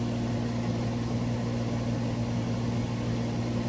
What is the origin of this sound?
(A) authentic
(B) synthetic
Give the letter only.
A